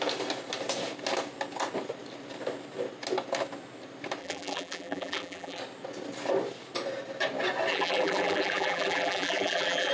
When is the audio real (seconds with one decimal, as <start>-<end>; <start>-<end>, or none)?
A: 0.0-4.2; 5.6-7.7